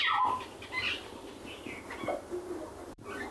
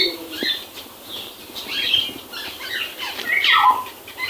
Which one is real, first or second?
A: first